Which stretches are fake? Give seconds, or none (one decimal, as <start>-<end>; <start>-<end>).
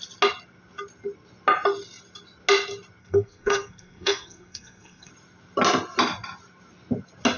3.0-5.1